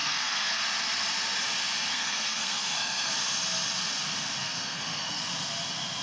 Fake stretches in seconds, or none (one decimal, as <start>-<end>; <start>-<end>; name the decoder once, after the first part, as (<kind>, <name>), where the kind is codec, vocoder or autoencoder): 0.0-0.6 (codec, SNAC); 1.9-3.1; 4.4-5.2